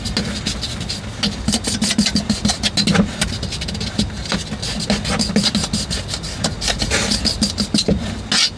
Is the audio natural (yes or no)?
yes